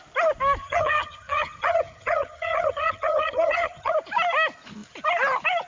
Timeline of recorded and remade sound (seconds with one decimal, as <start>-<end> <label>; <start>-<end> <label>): 0.0-0.6 recorded; 0.6-3.9 remade; 3.9-5.7 recorded

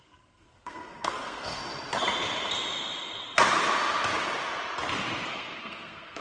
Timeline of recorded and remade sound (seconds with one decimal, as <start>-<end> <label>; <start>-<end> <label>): 0.0-1.6 remade; 1.6-5.3 recorded; 5.3-6.2 remade

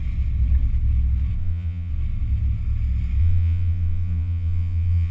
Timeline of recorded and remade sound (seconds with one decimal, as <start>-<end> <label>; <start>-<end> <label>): 0.0-1.4 recorded; 1.4-1.9 remade; 1.9-3.2 recorded; 3.2-5.1 remade

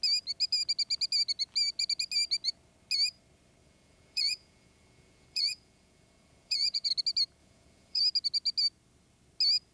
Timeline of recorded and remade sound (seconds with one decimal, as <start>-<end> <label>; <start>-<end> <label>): 0.0-3.6 recorded; 3.6-6.9 remade; 6.9-7.4 recorded; 7.4-8.0 remade; 8.0-9.7 recorded

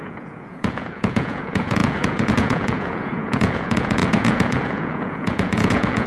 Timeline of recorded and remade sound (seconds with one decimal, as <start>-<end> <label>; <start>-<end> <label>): 0.0-6.1 remade